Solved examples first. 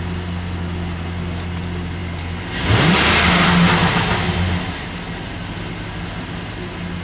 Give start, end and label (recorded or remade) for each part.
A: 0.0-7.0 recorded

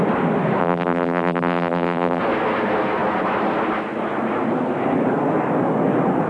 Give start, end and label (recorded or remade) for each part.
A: 0.0-0.6 recorded; 0.6-2.2 remade; 2.2-6.3 recorded

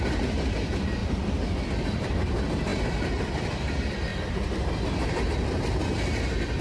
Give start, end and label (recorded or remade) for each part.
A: 0.0-1.0 recorded; 1.0-1.6 remade; 1.6-2.7 recorded; 2.7-3.2 remade; 3.2-4.1 recorded; 4.1-5.2 remade; 5.2-6.6 recorded

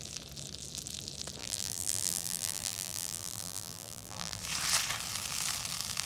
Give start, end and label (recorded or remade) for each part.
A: 0.0-1.4 recorded; 1.4-4.4 remade; 4.4-6.1 recorded

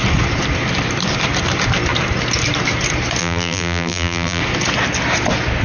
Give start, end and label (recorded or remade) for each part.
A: 0.0-3.2 recorded; 3.2-4.4 remade; 4.4-5.6 recorded

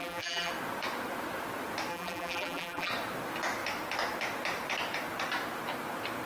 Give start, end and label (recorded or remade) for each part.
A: 0.0-0.5 remade; 0.5-1.9 recorded; 1.9-2.9 remade; 2.9-6.3 recorded